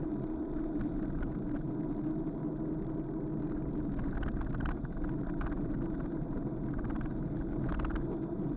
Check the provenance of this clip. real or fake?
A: real